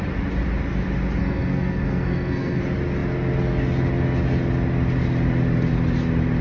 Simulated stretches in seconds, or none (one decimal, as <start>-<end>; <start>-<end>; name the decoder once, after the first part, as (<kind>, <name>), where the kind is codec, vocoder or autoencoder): 1.2-2.6 (codec, SNAC)